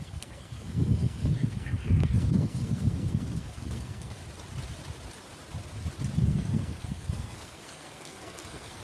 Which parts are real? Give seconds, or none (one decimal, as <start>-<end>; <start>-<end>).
4.2-6.2